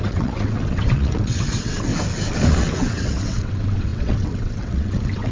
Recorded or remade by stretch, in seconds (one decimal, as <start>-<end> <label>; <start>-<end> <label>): 0.0-1.9 remade; 1.9-2.5 recorded; 2.5-5.3 remade